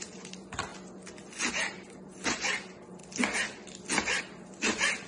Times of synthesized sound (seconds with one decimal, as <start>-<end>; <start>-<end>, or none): 0.0-0.7; 1.5-3.0; 4.2-5.1